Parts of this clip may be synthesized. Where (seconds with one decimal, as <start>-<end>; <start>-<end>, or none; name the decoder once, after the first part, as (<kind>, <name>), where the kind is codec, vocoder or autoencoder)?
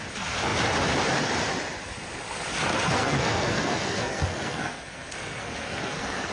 2.7-6.3 (codec, SNAC)